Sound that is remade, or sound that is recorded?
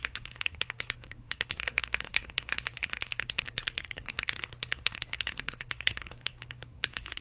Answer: remade